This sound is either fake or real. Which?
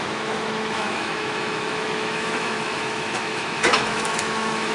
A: fake